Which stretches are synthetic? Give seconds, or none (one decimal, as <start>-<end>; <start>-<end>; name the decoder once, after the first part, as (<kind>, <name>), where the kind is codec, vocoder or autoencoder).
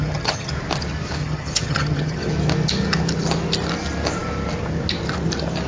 0.0-0.5 (vocoder, HiFi-GAN); 1.2-2.3